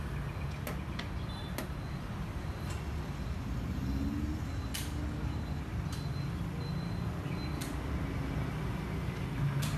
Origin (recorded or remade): recorded